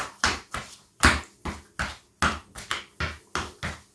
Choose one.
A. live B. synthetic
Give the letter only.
A